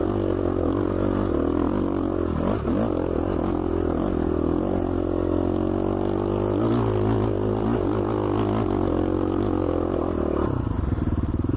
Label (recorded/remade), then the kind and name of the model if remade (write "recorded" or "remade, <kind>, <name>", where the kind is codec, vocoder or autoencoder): recorded